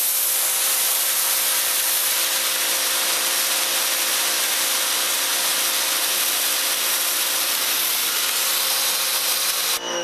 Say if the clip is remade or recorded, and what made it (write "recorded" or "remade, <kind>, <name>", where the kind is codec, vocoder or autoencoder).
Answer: recorded